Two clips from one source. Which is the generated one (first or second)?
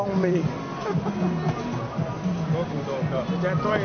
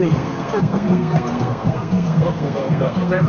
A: second